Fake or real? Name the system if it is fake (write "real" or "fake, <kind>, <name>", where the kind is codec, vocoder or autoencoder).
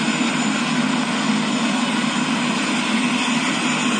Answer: real